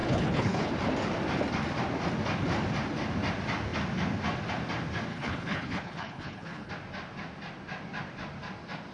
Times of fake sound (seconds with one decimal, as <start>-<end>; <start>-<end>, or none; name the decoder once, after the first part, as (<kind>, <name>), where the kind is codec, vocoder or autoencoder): 0.0-0.7 (codec, HILCodec); 5.1-6.7